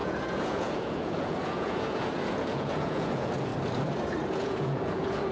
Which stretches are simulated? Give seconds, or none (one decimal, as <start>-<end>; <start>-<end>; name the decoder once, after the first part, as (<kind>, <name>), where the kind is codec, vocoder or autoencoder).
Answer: 0.0-3.5 (vocoder, Vocos); 4.3-5.3